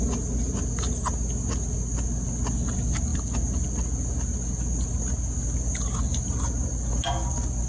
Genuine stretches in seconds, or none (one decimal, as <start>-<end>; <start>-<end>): 0.0-7.7